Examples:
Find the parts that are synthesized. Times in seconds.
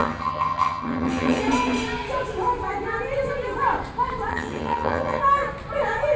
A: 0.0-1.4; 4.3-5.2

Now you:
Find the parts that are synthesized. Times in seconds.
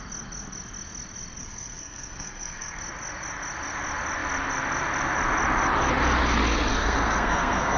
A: 1.4-2.8; 6.8-7.8